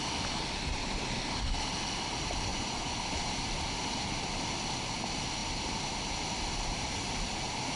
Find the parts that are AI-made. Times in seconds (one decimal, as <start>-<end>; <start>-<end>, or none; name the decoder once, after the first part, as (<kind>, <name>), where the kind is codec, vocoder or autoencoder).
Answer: 2.5-3.0 (vocoder, Vocos)